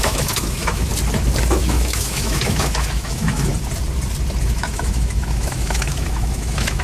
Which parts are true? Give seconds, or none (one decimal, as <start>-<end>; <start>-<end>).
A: 0.9-1.6; 3.5-4.4